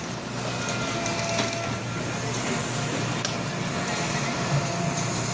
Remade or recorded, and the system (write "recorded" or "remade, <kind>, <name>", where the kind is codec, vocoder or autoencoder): recorded